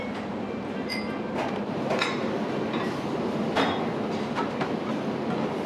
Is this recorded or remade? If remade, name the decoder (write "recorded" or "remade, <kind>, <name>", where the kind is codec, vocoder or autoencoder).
recorded